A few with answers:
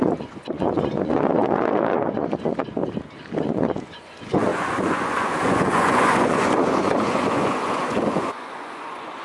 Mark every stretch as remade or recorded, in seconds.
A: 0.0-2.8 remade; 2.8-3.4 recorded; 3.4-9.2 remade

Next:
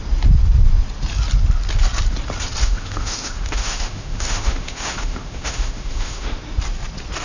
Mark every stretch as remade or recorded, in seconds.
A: 0.0-2.6 recorded; 2.6-6.4 remade; 6.4-7.2 recorded

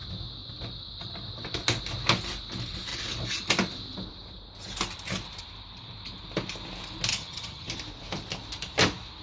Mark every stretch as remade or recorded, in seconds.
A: 0.0-7.1 recorded; 7.1-7.7 remade; 7.7-9.2 recorded